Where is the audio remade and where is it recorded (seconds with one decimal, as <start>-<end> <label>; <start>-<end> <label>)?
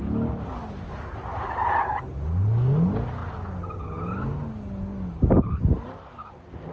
0.0-6.7 recorded